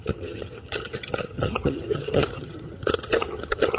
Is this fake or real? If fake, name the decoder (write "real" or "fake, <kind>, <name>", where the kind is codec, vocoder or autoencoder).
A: fake, vocoder, HiFi-GAN